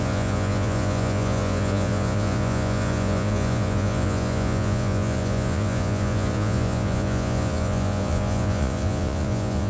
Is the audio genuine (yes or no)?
no